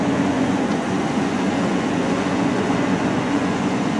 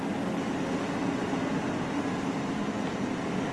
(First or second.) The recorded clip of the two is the second